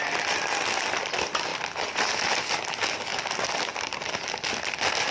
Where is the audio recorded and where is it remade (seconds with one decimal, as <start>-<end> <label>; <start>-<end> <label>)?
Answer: 0.0-1.5 recorded; 1.5-2.1 remade; 2.1-5.1 recorded